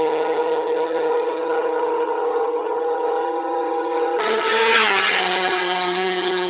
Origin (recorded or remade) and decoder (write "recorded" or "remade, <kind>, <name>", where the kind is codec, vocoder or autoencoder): remade, vocoder, HiFi-GAN